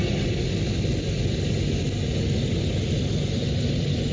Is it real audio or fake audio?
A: real